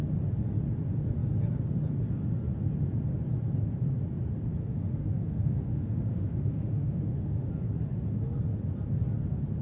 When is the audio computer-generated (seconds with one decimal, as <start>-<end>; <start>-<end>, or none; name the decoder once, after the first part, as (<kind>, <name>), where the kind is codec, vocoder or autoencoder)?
4.6-7.5 (autoencoder, DAC-VAE)